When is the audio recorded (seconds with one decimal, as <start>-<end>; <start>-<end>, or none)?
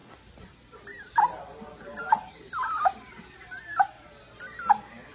0.0-5.1